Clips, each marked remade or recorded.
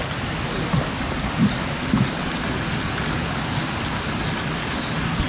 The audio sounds recorded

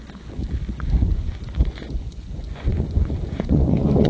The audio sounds remade